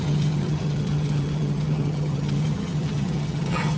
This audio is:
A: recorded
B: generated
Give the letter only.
B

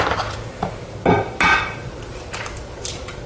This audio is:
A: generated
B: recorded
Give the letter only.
B